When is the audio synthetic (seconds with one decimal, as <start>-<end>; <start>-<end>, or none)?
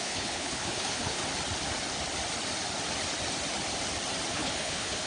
0.0-1.2; 4.3-5.1